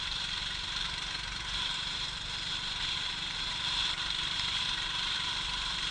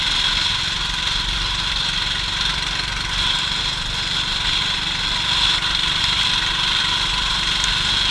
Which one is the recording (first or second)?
second